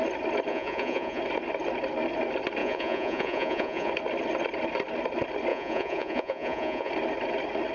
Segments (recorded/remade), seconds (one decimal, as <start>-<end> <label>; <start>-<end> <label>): 0.0-0.5 recorded; 0.5-1.2 remade; 1.2-2.6 recorded; 2.6-3.9 remade; 3.9-5.5 recorded; 5.5-6.9 remade; 6.9-7.7 recorded